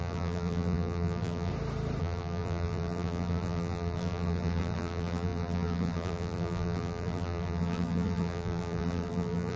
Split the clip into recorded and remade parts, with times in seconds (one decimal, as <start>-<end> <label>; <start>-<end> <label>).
0.0-1.5 remade; 1.5-2.0 recorded; 2.0-9.6 remade